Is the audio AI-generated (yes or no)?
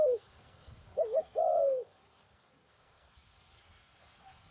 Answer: yes